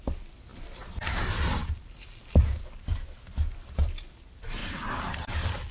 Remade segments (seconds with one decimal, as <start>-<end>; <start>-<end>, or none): 0.0-4.6